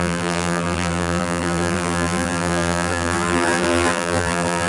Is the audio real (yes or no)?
no